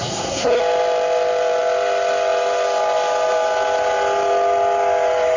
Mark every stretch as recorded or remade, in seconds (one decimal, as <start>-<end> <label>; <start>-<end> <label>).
0.0-0.6 remade; 0.6-5.4 recorded